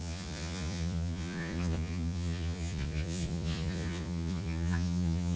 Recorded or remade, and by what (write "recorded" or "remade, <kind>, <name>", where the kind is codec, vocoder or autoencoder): remade, vocoder, Vocos